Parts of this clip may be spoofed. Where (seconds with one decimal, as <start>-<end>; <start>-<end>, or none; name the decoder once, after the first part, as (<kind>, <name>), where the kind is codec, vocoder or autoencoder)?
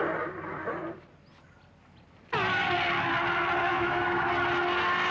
3.6-4.3 (autoencoder, DAC-VAE)